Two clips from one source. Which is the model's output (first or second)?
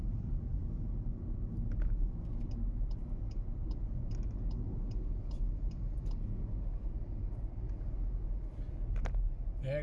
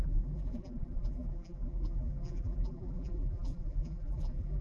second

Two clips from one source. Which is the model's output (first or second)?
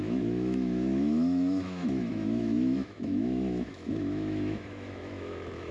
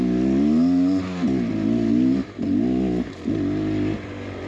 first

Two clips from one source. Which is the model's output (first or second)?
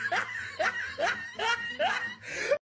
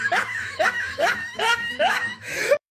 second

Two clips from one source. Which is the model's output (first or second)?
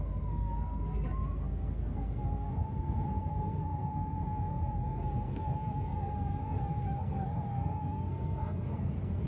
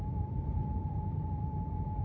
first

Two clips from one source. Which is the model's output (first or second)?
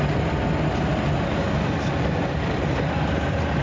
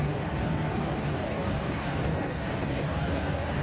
second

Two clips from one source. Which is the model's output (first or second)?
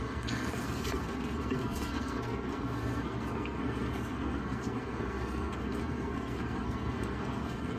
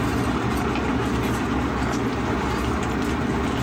first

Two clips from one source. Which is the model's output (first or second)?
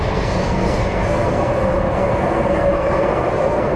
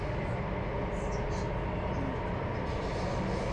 first